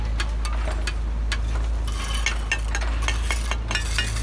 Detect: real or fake real